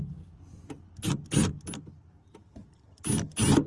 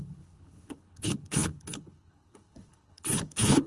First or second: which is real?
first